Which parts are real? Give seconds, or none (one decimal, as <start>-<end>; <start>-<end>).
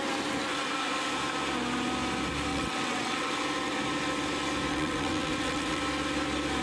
0.0-2.5; 3.3-4.7; 5.8-6.6